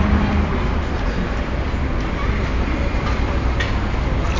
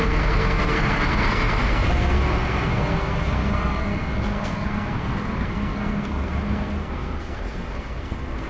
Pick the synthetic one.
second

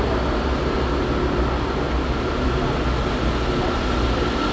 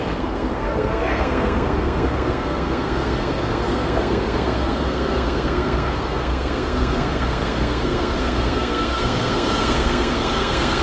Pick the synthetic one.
second